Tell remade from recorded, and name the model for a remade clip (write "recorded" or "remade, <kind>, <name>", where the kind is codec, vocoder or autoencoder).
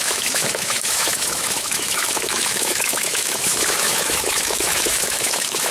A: remade, autoencoder, DAC-VAE